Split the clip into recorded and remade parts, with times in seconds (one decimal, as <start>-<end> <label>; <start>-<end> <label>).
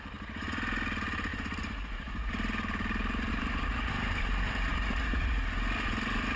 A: 0.0-1.3 recorded; 1.3-2.3 remade; 2.3-3.3 recorded; 3.3-3.9 remade; 3.9-4.7 recorded; 4.7-5.4 remade; 5.4-6.4 recorded